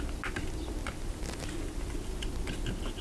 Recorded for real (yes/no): yes